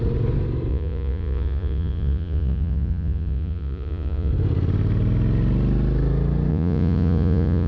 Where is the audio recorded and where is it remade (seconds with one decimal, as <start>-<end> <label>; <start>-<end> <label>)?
0.0-0.7 recorded; 0.7-4.3 remade; 4.3-6.5 recorded; 6.5-7.7 remade